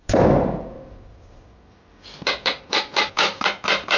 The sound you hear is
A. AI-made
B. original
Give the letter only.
A